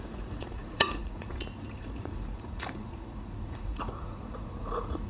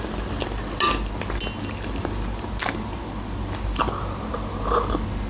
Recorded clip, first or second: second